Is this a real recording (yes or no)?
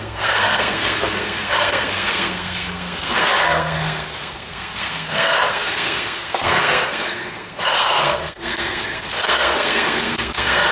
no